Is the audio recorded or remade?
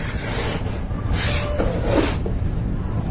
recorded